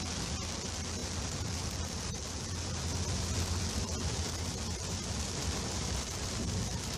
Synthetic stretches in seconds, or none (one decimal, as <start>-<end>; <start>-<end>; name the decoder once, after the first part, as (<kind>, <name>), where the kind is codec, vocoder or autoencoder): none